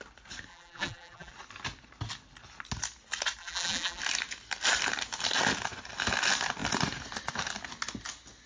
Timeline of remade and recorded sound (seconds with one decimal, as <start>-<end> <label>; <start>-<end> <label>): 0.0-0.5 recorded; 0.5-1.3 remade; 1.3-3.4 recorded; 3.4-4.0 remade; 4.0-8.5 recorded